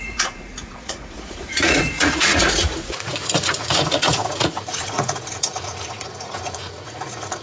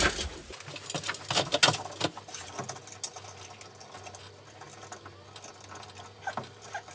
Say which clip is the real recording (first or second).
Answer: second